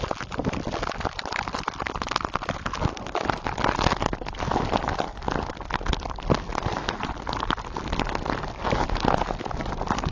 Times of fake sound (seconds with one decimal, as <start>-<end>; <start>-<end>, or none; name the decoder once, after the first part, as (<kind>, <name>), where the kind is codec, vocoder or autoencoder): none